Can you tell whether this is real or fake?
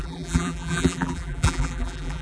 fake